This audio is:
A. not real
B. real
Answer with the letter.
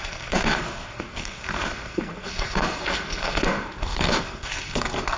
A